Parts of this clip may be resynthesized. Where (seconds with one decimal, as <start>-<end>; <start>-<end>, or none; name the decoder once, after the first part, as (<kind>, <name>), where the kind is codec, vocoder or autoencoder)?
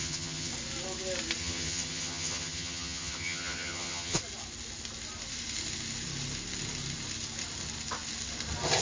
0.0-0.5 (vocoder, HiFi-GAN); 1.4-4.2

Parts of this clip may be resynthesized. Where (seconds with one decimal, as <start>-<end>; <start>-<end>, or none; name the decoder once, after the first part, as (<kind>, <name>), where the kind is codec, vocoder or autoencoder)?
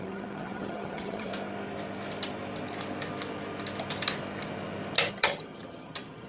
0.0-1.3 (vocoder, HiFi-GAN); 5.1-6.3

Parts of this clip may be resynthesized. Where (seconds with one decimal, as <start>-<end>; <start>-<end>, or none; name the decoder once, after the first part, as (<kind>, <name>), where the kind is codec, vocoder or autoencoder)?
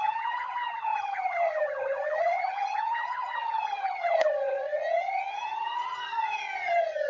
0.0-7.1 (vocoder, HiFi-GAN)